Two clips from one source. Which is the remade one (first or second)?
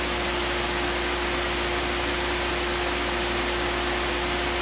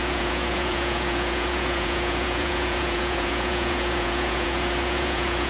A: second